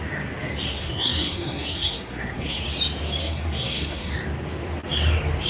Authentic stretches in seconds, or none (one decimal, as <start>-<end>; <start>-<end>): 0.0-0.8; 2.6-3.2; 4.1-5.5